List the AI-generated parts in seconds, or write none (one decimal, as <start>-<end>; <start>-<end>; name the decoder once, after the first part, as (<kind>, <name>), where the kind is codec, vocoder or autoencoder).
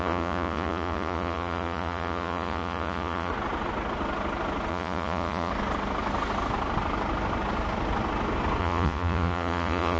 0.0-3.3 (vocoder, Vocos); 4.7-5.5; 8.6-10.0